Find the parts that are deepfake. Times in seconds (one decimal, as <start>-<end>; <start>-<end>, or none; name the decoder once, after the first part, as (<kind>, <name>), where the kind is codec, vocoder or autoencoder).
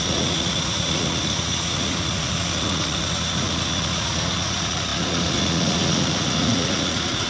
0.0-7.3 (vocoder, Vocos)